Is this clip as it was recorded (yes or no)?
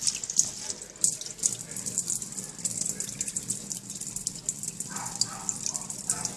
yes